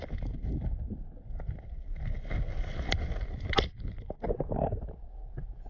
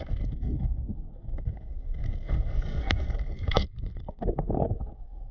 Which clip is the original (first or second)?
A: first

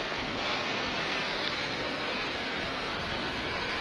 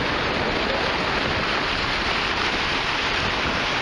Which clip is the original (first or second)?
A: second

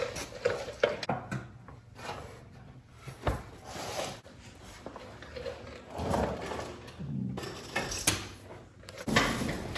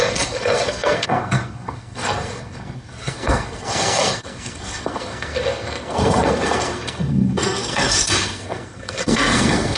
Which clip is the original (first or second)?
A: first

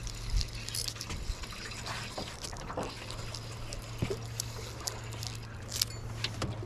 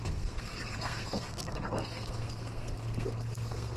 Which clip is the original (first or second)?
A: first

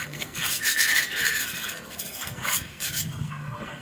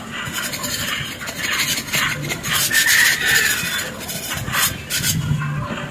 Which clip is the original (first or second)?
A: second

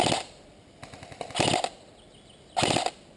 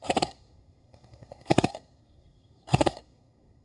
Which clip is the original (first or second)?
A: first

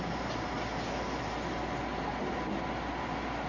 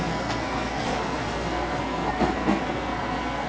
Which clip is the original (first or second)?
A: first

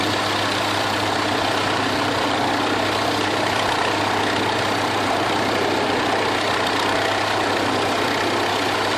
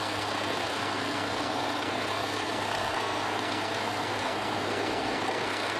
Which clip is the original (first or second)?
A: first